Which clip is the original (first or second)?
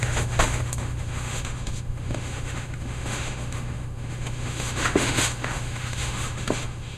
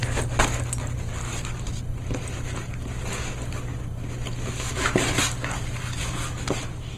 second